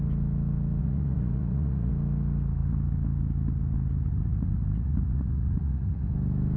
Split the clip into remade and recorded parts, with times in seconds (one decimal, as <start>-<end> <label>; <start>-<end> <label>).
0.0-0.8 recorded; 0.8-1.9 remade; 1.9-4.1 recorded; 4.1-6.1 remade; 6.1-6.6 recorded